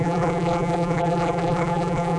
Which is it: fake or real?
fake